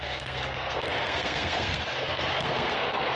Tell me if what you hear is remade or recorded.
remade